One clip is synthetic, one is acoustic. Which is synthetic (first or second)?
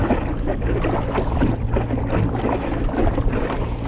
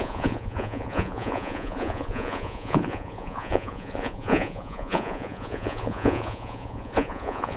second